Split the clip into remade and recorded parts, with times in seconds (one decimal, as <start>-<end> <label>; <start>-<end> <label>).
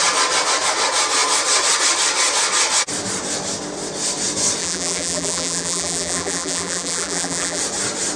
0.0-4.6 recorded; 4.6-7.6 remade; 7.6-8.2 recorded